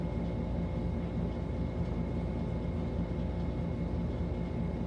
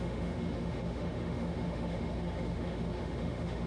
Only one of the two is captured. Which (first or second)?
first